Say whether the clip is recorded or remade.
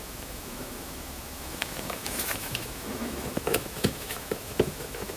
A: remade